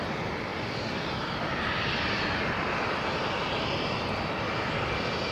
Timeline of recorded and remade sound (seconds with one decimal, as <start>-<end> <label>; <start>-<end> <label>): 0.0-5.3 recorded